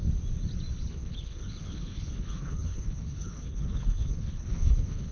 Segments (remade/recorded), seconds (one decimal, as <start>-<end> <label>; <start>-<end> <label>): 0.0-0.9 recorded; 0.9-5.1 remade